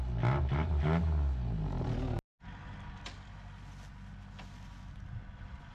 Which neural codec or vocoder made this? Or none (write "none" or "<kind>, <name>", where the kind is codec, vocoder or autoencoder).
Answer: none